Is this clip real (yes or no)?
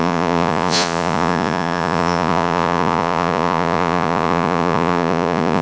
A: no